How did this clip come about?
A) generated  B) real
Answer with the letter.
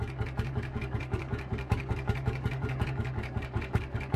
A